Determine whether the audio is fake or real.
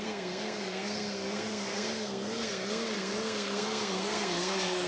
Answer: fake